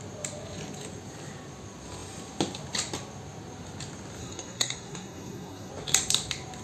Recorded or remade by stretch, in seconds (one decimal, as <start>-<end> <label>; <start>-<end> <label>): 0.0-4.2 recorded; 4.2-5.7 remade; 5.7-6.6 recorded